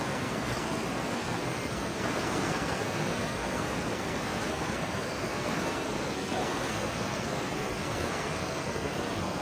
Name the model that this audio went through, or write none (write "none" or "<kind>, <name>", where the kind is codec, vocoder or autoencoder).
codec, SNAC